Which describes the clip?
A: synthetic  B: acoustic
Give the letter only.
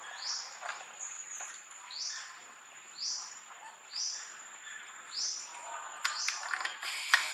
B